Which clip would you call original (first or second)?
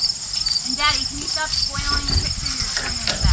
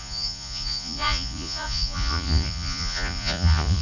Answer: first